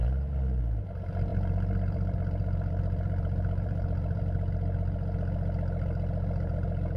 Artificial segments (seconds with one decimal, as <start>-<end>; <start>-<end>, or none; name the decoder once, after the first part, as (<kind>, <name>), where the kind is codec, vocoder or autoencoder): 0.0-0.6 (vocoder, BigVGAN v2); 1.3-4.2